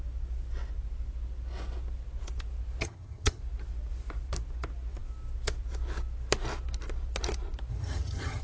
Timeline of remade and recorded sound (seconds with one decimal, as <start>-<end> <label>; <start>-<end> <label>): 0.0-2.8 recorded; 2.8-3.4 remade; 3.4-7.7 recorded; 7.7-8.4 remade